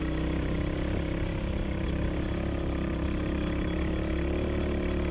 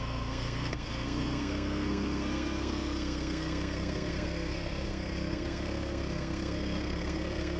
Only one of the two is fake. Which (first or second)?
second